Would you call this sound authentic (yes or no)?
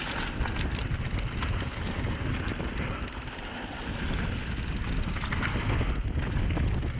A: yes